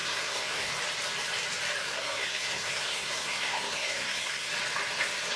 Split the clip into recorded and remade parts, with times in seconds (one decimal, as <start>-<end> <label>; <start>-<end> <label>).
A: 0.0-0.7 remade; 0.7-1.8 recorded; 1.8-4.5 remade; 4.5-5.4 recorded